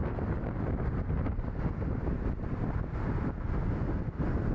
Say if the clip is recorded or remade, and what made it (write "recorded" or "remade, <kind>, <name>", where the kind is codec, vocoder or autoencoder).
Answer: recorded